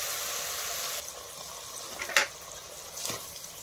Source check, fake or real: real